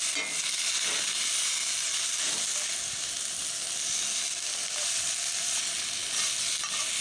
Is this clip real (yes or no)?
yes